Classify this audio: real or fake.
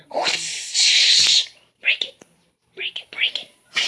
real